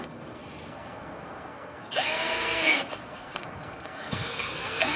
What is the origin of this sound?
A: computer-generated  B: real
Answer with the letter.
A